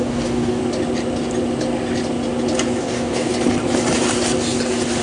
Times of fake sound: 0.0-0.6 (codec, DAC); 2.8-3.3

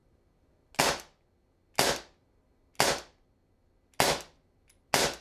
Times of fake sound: none

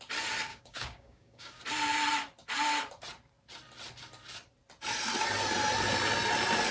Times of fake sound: 0.5-1.6 (codec, DAC)

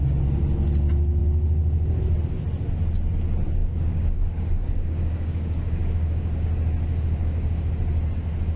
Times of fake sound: 3.6-6.4 (codec, DAC); 7.2-7.7

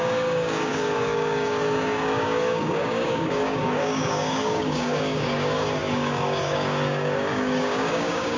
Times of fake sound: 0.0-8.4 (codec, DAC)

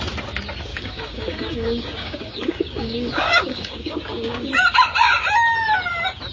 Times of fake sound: 0.7-4.5 (codec, DAC)

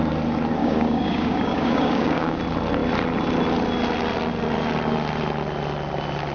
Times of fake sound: 0.6-2.4 (codec, DAC)

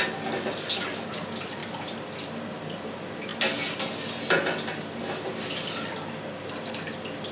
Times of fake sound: none